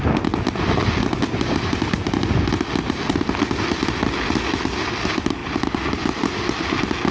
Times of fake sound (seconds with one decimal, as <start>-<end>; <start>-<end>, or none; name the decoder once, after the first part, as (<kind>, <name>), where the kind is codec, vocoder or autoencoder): none